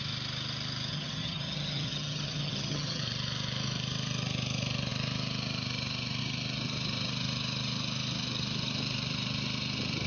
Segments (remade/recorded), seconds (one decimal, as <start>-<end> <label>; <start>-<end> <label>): 0.0-0.9 recorded; 0.9-3.0 remade; 3.0-10.1 recorded

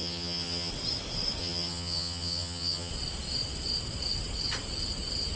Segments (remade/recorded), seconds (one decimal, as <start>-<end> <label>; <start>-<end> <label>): 0.0-0.7 remade; 0.7-1.4 recorded; 1.4-2.9 remade; 2.9-5.4 recorded

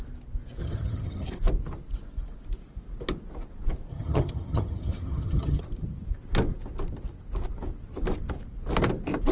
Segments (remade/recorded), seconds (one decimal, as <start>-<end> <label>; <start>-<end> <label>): 0.0-0.6 recorded; 0.6-1.3 remade; 1.3-3.9 recorded; 3.9-5.6 remade; 5.6-9.3 recorded

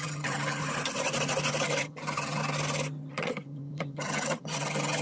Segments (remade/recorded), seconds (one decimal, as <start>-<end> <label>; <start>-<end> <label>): 0.0-0.6 remade; 0.6-1.6 recorded; 1.6-2.4 remade; 2.4-3.1 recorded; 3.1-5.0 remade

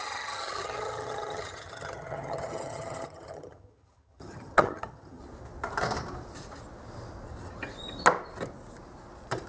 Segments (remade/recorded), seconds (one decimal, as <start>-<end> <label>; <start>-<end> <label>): 0.0-5.2 remade; 5.2-9.5 recorded

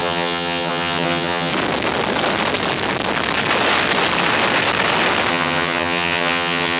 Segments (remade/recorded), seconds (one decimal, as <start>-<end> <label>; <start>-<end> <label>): 0.0-1.5 remade; 1.5-5.3 recorded; 5.3-6.8 remade

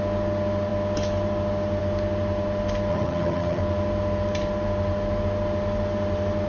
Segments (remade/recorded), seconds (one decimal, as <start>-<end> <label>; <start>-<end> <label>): 0.0-2.9 recorded; 2.9-3.6 remade; 3.6-6.5 recorded